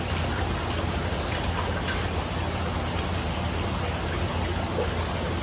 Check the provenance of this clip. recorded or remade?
recorded